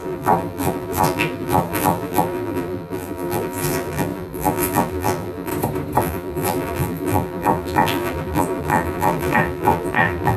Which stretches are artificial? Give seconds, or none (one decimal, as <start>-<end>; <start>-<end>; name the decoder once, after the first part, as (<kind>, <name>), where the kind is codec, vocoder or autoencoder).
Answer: 0.0-5.5 (vocoder, BigVGAN v2); 6.0-10.4